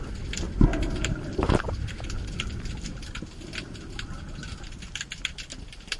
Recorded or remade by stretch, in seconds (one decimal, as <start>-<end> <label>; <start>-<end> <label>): 0.0-0.7 recorded; 0.7-3.1 remade; 3.1-6.0 recorded